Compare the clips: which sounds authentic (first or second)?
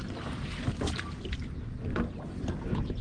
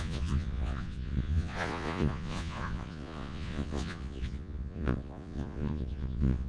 first